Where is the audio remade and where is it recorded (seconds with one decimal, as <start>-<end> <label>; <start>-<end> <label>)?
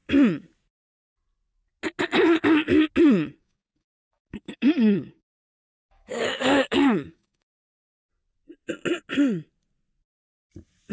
0.0-3.4 recorded; 3.4-8.1 remade; 8.1-10.9 recorded